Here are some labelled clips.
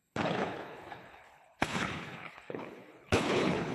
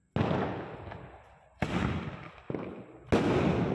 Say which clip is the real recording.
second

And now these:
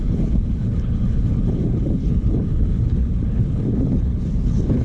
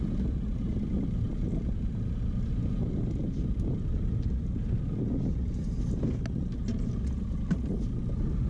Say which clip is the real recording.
second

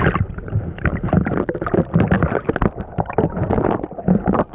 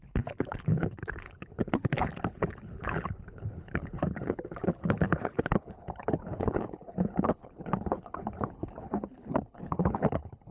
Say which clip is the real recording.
first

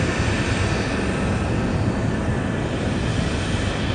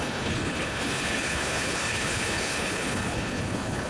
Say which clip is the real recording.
first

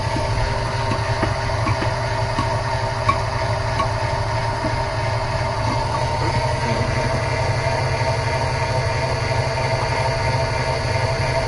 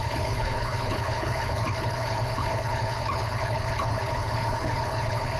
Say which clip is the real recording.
first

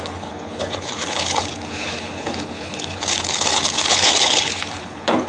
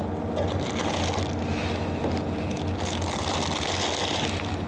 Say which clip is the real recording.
second